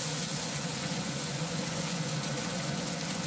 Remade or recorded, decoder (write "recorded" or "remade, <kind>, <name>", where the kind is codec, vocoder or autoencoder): remade, vocoder, Vocos